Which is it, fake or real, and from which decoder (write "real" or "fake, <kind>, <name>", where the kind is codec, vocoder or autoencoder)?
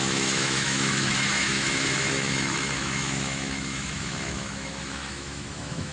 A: fake, autoencoder, DAC-VAE